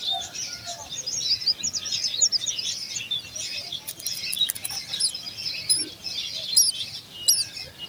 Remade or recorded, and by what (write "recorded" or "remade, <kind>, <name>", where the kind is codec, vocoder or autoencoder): recorded